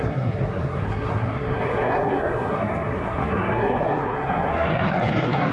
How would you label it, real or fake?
fake